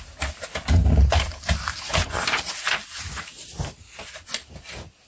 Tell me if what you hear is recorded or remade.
recorded